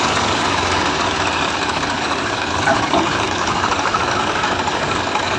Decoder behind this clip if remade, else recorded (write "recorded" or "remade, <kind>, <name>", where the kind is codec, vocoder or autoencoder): remade, codec, DAC